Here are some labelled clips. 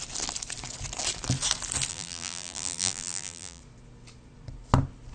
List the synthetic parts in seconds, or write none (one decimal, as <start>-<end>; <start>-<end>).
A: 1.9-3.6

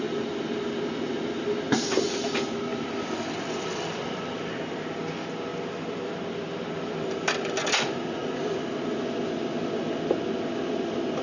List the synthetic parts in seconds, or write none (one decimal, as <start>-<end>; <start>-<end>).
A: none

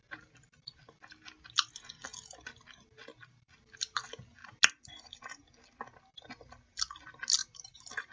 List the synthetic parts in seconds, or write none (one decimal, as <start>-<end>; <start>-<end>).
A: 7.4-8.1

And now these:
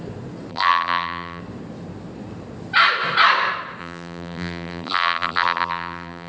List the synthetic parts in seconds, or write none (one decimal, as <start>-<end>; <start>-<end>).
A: 0.5-1.4; 3.8-6.3

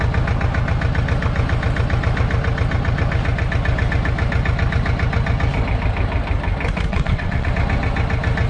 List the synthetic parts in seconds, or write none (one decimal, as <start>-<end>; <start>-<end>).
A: 6.9-7.5

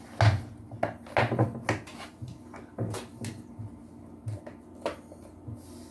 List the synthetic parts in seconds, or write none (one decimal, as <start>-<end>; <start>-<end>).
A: none

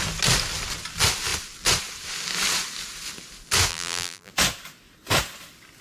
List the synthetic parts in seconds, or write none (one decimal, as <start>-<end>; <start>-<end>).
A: 3.7-4.3

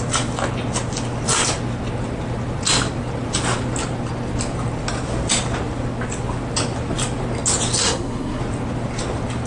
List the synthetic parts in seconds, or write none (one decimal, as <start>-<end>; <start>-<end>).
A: 7.8-8.4